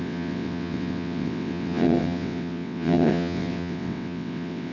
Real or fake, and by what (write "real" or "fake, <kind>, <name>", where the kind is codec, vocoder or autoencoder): fake, vocoder, WaveNeXt